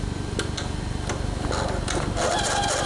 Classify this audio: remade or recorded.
recorded